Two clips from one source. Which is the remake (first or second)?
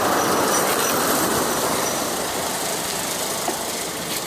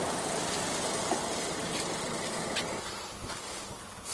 first